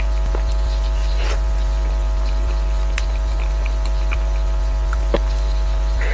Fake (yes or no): no